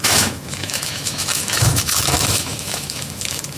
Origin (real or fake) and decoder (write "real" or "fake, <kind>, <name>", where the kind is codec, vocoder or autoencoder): fake, autoencoder, DAC-VAE